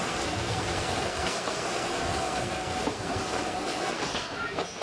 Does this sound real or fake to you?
fake